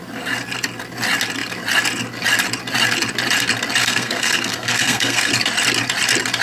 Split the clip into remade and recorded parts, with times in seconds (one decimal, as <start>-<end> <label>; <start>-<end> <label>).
0.0-3.8 recorded; 3.8-5.3 remade; 5.3-6.4 recorded